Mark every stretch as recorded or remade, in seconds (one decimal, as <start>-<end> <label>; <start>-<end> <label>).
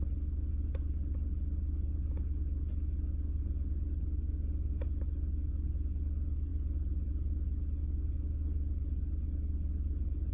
0.0-10.3 recorded